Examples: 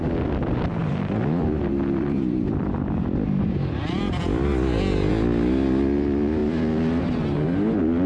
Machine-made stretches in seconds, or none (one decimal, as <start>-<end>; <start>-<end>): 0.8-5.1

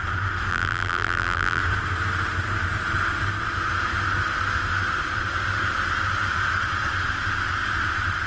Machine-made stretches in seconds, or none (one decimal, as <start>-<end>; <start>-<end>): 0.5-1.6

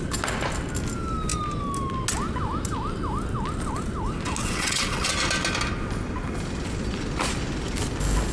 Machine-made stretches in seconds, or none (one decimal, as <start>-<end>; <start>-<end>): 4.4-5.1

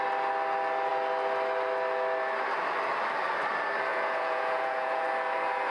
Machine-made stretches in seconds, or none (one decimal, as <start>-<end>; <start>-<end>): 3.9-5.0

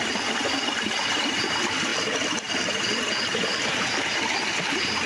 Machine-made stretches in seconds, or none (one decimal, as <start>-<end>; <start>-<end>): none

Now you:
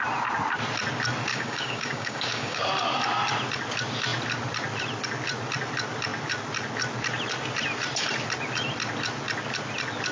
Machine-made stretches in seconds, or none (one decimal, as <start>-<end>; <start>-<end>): 1.3-2.6

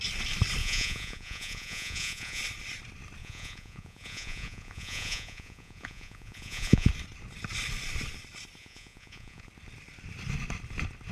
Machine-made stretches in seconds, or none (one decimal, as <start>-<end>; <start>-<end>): 0.6-2.4; 3.2-6.9; 8.6-9.5

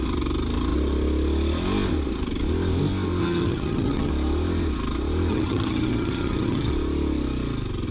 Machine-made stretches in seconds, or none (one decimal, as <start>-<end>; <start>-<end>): 3.2-4.1; 5.3-6.7